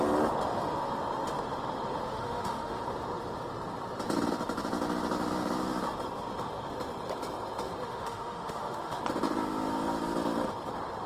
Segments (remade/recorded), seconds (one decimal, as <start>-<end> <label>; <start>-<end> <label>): 0.0-2.1 recorded; 2.1-2.8 remade; 2.8-7.8 recorded; 7.8-9.0 remade; 9.0-11.1 recorded